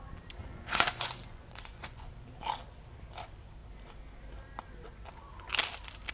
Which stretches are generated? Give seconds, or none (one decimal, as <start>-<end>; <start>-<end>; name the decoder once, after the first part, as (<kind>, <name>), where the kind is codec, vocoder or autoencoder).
0.4-2.1 (vocoder, Vocos)